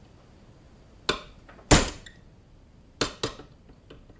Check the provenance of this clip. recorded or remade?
recorded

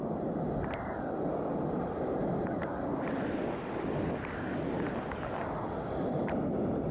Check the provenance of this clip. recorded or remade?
recorded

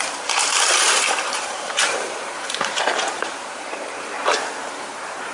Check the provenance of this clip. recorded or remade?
remade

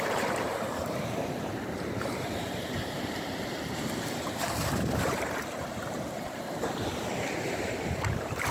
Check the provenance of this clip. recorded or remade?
remade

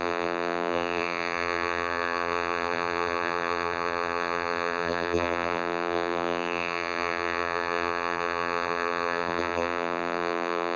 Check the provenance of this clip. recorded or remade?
remade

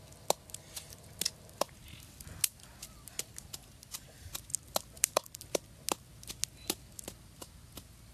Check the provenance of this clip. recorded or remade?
recorded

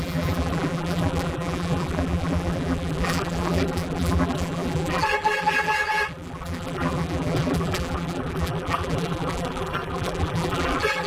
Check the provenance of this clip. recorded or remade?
remade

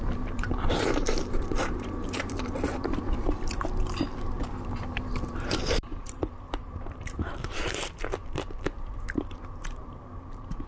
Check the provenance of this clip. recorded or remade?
remade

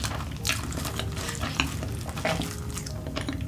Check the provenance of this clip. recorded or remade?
recorded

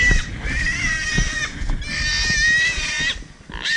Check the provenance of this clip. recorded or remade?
recorded